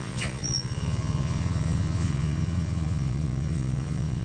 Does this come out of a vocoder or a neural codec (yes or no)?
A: yes